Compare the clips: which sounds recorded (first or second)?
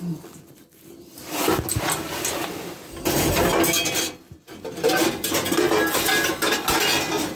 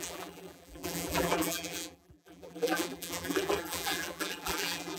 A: first